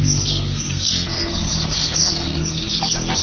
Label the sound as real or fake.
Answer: fake